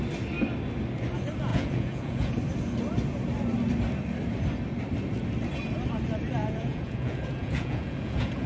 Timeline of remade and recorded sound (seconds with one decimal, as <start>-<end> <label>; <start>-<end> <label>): 0.0-1.5 recorded; 1.5-2.3 remade; 2.3-6.4 recorded; 6.4-8.5 remade